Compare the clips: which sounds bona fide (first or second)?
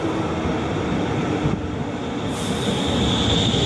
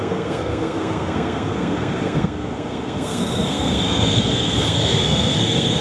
first